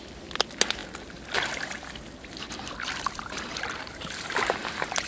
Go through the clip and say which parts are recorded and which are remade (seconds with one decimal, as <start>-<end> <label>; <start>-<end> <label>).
0.0-5.1 recorded